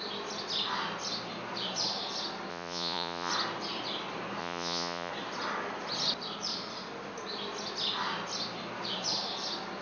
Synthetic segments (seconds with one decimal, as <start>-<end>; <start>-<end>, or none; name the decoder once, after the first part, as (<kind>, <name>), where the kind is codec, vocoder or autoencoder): 2.5-3.3 (vocoder, Vocos); 4.4-5.1